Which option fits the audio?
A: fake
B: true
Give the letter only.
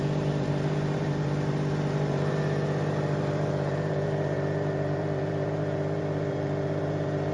A